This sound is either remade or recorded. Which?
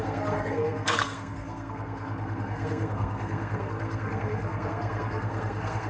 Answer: remade